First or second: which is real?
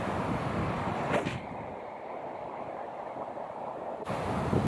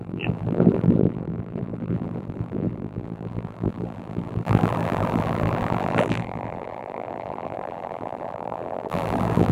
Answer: first